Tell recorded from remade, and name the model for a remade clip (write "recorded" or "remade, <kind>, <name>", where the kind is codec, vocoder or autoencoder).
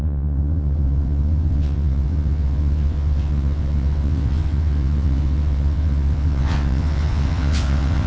remade, vocoder, WaveNeXt